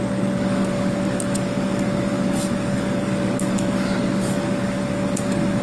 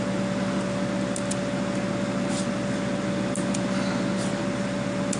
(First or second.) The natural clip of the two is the second